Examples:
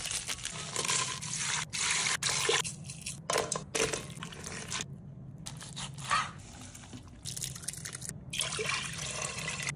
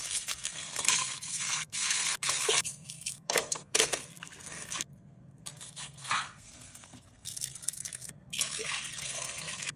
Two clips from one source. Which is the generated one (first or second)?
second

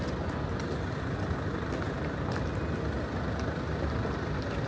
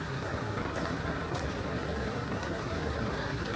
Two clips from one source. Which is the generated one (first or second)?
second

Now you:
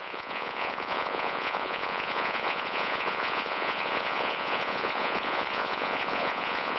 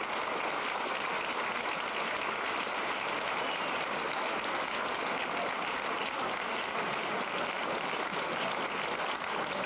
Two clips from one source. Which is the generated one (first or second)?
first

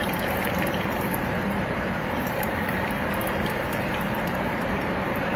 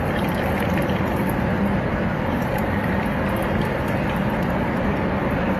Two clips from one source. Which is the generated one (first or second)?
first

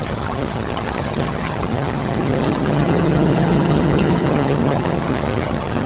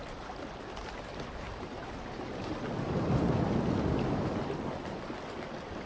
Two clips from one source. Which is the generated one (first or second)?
first